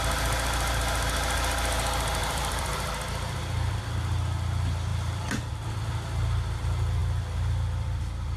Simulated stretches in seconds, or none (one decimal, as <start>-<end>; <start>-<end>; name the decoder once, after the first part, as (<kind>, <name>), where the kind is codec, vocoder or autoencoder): 2.2-3.8 (vocoder, BigVGAN v2); 4.9-5.9; 7.0-8.4